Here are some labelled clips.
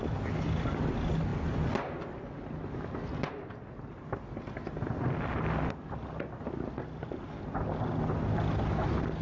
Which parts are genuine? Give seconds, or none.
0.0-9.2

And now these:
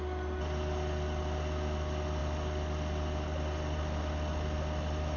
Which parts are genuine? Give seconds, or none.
0.0-5.2

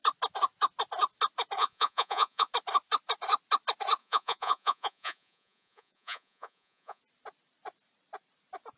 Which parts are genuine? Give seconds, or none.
0.0-1.6; 2.5-4.0; 7.0-8.8